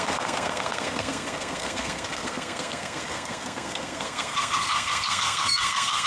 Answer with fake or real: fake